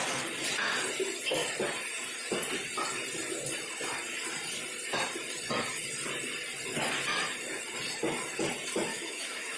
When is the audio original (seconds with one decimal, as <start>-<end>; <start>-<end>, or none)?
0.0-8.9